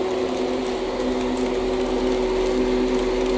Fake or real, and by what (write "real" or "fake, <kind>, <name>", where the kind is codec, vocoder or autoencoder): real